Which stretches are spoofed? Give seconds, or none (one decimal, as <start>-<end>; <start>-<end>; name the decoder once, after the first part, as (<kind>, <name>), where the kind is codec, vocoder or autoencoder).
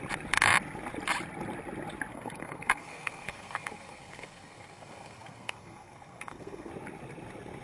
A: 2.1-6.7 (codec, SNAC)